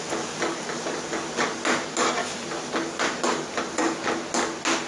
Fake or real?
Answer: real